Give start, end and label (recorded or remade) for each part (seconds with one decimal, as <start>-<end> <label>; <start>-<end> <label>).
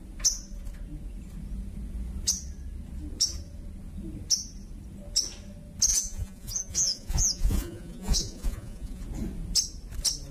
0.0-5.9 recorded; 5.9-9.0 remade; 9.0-10.3 recorded